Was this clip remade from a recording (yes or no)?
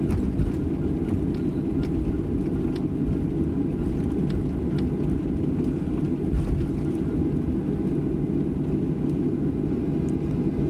no